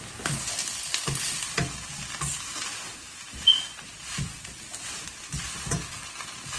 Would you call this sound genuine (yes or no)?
yes